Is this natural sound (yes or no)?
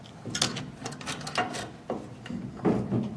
yes